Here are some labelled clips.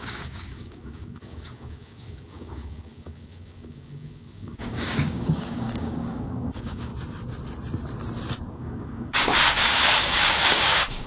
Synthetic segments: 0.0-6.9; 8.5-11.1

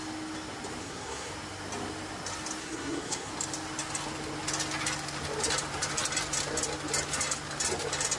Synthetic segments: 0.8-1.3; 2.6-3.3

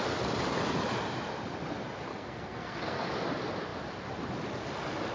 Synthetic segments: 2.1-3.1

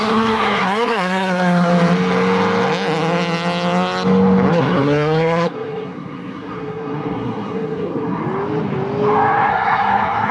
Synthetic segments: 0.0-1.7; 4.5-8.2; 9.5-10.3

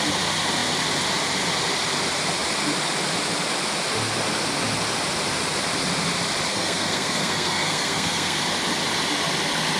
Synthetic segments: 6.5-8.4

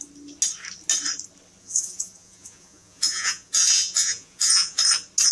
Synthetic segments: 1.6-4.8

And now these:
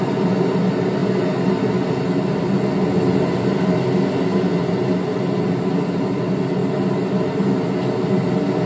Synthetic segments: 0.0-1.0; 5.7-6.6; 7.9-8.7

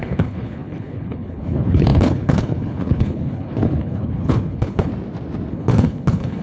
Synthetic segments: 0.0-4.9; 5.5-6.4